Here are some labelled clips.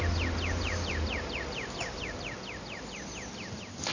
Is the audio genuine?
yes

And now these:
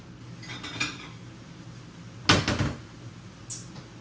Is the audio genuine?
yes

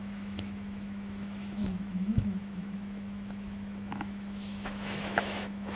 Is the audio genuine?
no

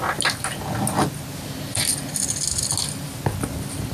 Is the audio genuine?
yes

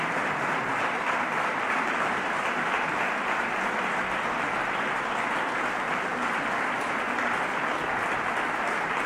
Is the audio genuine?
yes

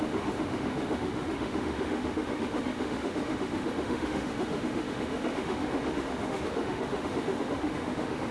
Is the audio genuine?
no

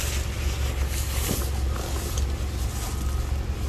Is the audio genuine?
yes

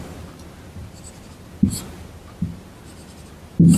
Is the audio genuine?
yes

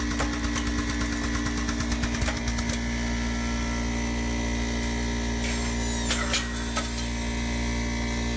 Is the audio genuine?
yes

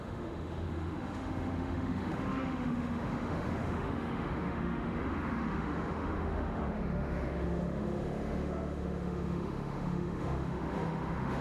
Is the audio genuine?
no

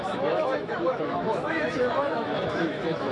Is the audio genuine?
no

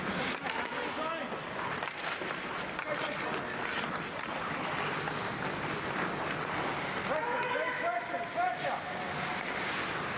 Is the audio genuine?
yes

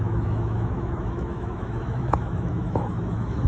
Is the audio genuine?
no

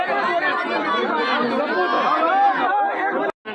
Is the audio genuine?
yes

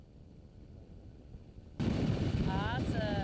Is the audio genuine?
yes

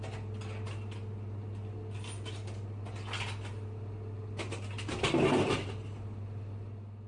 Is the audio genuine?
yes